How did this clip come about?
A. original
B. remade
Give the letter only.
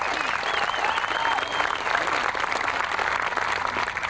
A